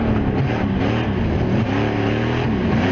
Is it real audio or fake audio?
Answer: real